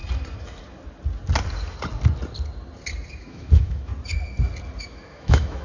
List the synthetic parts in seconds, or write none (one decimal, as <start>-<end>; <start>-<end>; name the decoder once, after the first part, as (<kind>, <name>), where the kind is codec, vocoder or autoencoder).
3.2-3.9 (autoencoder, DAC-VAE); 4.8-5.6